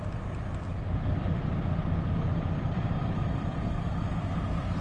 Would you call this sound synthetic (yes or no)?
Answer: yes